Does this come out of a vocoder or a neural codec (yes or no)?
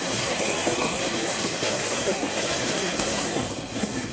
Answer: yes